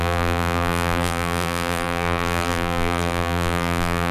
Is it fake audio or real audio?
fake